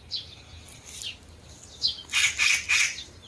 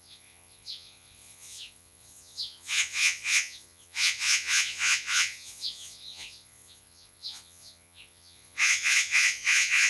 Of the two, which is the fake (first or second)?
second